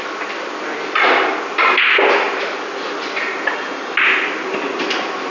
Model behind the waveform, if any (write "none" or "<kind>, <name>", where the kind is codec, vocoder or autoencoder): none